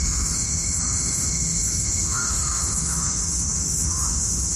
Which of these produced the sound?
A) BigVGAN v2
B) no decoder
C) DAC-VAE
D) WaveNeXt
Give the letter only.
C